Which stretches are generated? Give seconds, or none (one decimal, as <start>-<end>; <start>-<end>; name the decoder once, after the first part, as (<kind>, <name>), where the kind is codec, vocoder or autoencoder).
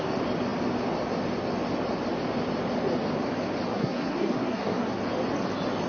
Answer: 3.7-5.0 (codec, SNAC)